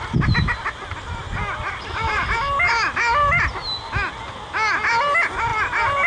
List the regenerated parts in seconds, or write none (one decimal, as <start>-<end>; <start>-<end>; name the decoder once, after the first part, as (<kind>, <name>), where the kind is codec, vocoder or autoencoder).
none